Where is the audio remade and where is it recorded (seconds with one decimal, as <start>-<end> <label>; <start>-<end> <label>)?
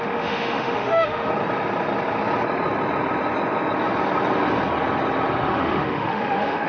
0.0-1.3 remade; 1.3-5.3 recorded; 5.3-6.7 remade